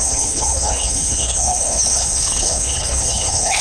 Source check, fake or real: fake